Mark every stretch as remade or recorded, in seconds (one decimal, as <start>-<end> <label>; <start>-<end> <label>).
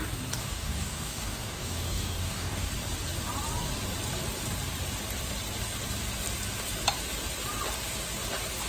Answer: 0.0-0.4 recorded; 0.4-2.7 remade; 2.7-8.7 recorded